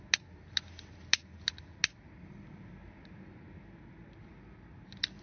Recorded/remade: recorded